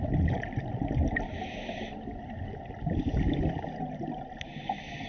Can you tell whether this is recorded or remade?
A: recorded